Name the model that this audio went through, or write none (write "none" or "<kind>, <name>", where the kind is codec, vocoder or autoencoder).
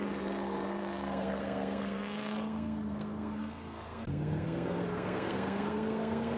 codec, SNAC